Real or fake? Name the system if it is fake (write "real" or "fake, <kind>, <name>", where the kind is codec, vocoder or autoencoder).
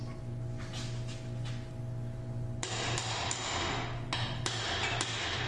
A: real